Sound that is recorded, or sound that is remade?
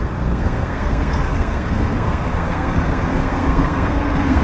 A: remade